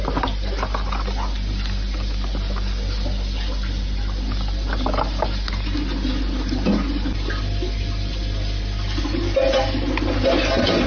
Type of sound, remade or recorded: recorded